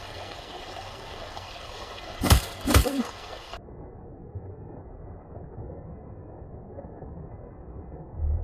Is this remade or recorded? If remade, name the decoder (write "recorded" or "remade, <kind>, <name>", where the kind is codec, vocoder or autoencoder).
remade, codec, SNAC